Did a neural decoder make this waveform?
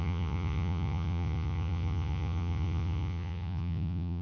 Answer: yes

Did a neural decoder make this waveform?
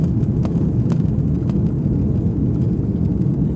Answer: no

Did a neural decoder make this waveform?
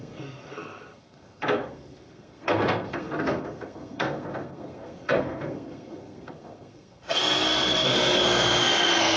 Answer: yes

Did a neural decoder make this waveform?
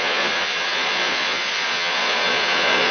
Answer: yes